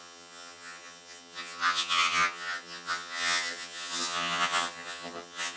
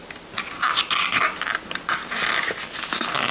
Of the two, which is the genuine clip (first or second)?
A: second